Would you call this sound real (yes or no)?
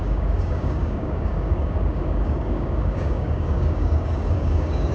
no